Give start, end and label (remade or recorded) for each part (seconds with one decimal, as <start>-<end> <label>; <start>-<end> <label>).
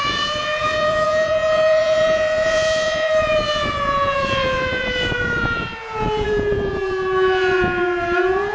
0.0-8.5 remade